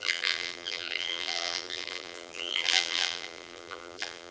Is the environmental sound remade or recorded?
remade